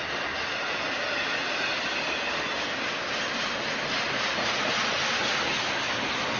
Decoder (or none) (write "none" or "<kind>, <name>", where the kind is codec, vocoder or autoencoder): none